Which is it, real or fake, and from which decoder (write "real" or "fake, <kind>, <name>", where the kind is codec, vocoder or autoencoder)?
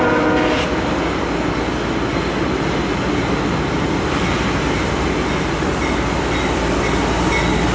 real